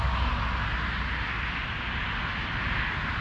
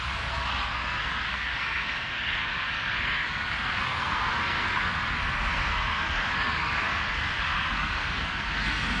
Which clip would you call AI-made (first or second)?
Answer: second